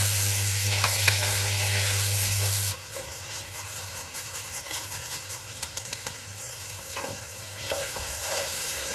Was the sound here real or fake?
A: fake